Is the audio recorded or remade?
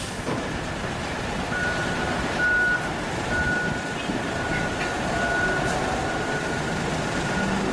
recorded